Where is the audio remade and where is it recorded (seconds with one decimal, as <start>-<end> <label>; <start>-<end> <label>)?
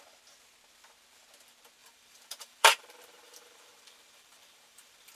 0.0-1.8 recorded; 1.8-5.1 remade